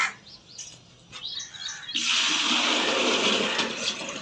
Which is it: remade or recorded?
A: recorded